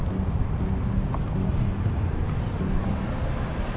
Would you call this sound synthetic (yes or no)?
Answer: no